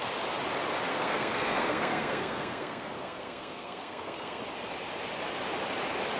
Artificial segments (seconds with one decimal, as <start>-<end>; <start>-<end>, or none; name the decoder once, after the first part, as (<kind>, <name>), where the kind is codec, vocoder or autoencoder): 0.9-4.4 (codec, SNAC)